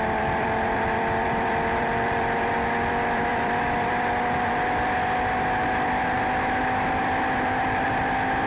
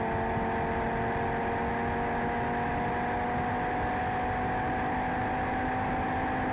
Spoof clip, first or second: first